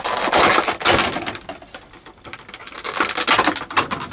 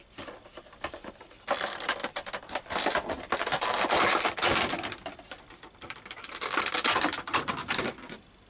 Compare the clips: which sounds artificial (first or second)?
second